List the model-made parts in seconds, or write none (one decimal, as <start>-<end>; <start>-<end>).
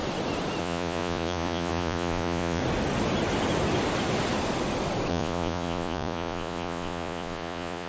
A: 0.6-2.6; 5.1-7.9